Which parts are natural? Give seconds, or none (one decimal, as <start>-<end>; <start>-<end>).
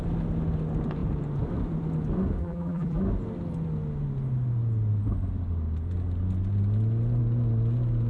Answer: 0.0-2.4; 3.0-8.1